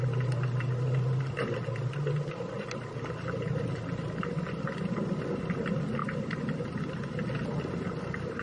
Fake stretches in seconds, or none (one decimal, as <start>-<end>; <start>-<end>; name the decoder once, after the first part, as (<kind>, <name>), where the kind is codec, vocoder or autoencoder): none